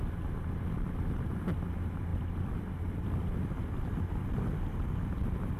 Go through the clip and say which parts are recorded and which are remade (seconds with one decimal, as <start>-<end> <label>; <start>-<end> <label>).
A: 0.0-2.1 recorded; 2.1-5.6 remade